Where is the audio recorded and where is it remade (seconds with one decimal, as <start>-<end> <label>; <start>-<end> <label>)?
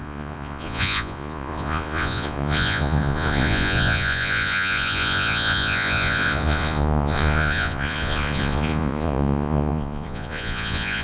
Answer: 0.0-11.0 remade